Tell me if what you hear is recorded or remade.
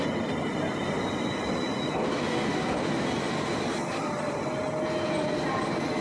recorded